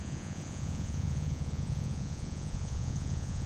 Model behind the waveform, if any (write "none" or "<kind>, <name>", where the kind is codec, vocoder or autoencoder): vocoder, Vocos